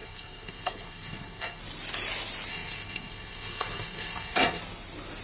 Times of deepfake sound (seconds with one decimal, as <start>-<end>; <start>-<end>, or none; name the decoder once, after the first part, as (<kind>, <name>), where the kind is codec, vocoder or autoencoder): 0.0-1.6 (codec, SNAC); 2.5-4.6